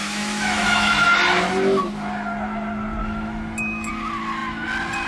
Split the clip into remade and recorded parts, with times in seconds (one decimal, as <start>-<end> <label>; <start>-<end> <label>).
0.0-0.9 remade; 0.9-3.0 recorded; 3.0-3.9 remade; 3.9-5.1 recorded